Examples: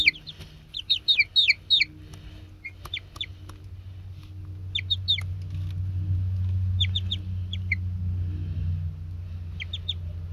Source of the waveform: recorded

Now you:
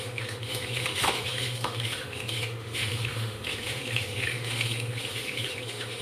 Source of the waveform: remade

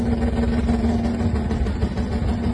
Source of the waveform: recorded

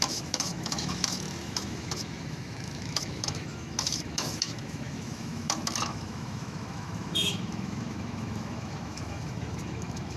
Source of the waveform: remade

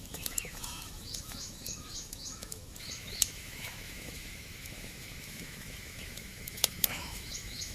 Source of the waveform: remade